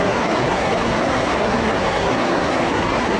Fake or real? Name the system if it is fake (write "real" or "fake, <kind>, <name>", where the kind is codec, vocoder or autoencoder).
fake, codec, SNAC